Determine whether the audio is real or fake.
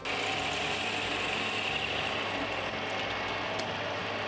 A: real